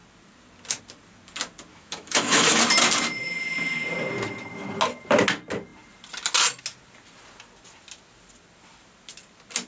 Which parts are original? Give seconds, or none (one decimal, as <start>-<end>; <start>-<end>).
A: 0.0-1.7; 2.6-9.7

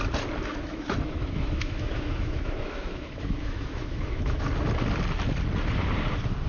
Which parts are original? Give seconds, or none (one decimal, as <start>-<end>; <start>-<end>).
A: 0.0-0.5; 4.4-6.5

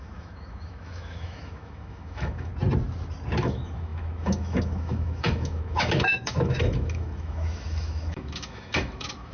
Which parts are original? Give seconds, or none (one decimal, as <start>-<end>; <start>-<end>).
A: 2.5-3.4

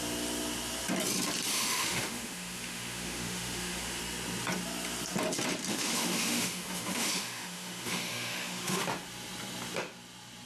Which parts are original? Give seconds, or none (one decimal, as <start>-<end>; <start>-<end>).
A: 0.0-1.5; 4.0-5.7; 8.8-10.5

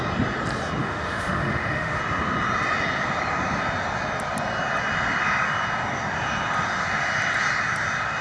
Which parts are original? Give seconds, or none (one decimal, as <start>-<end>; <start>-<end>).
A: 0.0-0.8; 2.0-8.2

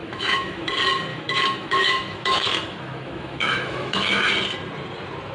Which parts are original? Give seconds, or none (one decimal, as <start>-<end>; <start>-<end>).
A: 0.7-1.1; 4.3-5.3

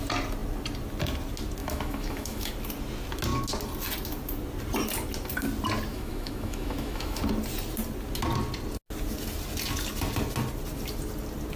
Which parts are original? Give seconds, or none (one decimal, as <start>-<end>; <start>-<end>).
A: 0.0-1.6; 2.5-5.9; 7.2-11.6